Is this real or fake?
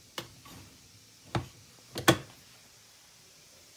real